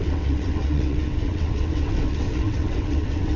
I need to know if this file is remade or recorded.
remade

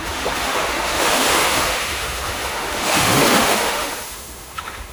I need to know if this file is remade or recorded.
remade